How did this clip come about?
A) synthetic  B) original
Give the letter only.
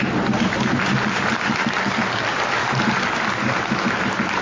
B